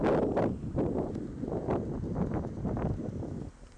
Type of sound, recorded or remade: recorded